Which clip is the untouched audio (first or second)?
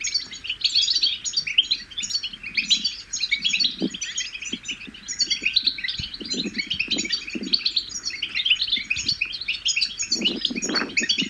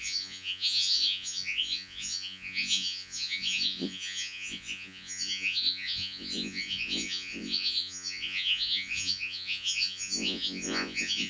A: first